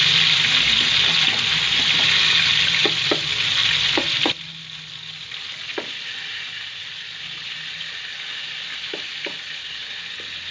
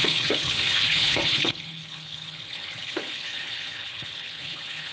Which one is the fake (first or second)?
second